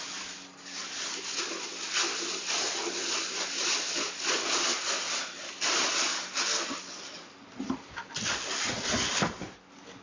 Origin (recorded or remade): recorded